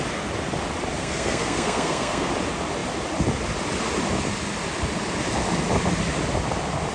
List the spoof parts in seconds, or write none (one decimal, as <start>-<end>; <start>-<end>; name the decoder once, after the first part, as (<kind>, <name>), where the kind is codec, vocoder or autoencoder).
1.0-2.3 (codec, SNAC)